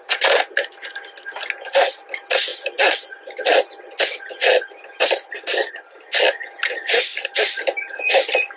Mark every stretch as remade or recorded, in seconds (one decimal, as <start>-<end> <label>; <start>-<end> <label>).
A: 0.0-8.6 recorded